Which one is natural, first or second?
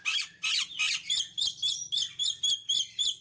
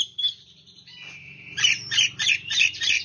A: first